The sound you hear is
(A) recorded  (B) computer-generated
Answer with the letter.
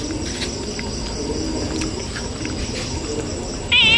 A